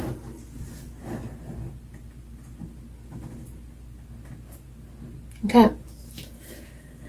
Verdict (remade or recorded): recorded